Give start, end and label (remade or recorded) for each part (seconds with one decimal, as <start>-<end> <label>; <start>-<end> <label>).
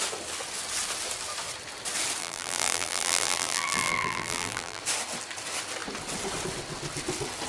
0.0-2.2 recorded; 2.2-4.8 remade; 4.8-7.5 recorded